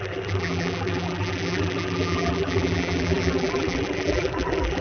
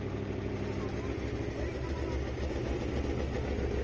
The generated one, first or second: first